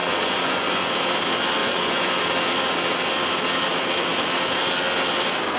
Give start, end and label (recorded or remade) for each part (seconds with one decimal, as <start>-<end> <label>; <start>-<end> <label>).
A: 0.0-0.9 remade; 0.9-1.6 recorded; 1.6-2.2 remade; 2.2-5.6 recorded